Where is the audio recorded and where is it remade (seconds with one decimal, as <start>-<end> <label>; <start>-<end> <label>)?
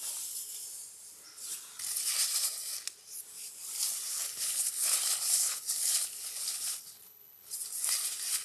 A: 0.0-4.1 recorded; 4.1-7.5 remade; 7.5-8.4 recorded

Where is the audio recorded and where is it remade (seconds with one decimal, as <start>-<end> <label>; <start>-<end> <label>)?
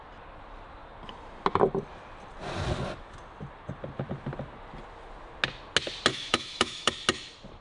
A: 0.0-6.1 recorded; 6.1-6.9 remade; 6.9-7.6 recorded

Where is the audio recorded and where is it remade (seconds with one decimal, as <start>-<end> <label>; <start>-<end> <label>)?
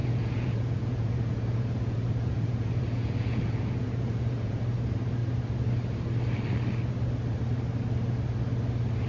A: 0.0-4.6 remade; 4.6-9.1 recorded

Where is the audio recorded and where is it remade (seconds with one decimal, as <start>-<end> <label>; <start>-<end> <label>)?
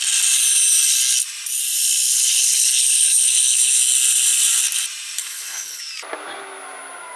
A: 0.0-2.1 recorded; 2.1-3.8 remade; 3.8-5.2 recorded; 5.2-5.8 remade; 5.8-7.2 recorded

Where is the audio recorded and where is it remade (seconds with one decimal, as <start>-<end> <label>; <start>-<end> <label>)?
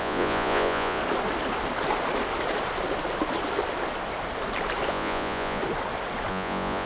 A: 0.0-1.0 remade; 1.0-4.9 recorded; 4.9-5.6 remade; 5.6-6.3 recorded; 6.3-6.9 remade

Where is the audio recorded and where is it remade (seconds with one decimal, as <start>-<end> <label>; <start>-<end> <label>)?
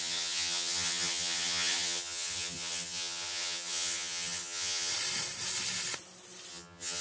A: 0.0-4.9 remade; 4.9-6.5 recorded; 6.5-7.0 remade